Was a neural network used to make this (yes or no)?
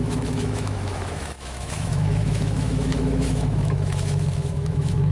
yes